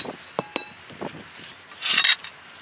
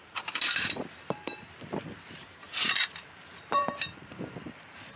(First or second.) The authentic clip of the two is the first